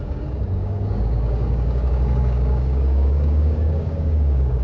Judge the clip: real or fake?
fake